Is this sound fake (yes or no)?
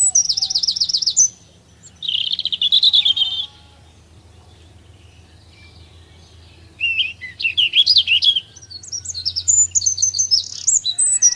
no